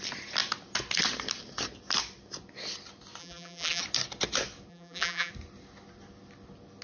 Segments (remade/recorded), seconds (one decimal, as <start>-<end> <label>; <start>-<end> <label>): 0.0-3.2 recorded; 3.2-3.8 remade; 3.8-4.7 recorded; 4.7-5.3 remade; 5.3-6.8 recorded